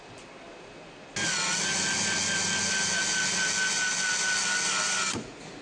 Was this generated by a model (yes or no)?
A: no